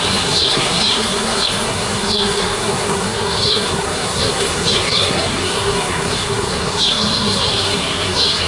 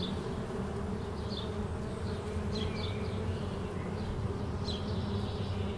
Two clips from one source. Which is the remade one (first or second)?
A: first